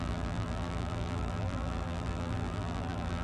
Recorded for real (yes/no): no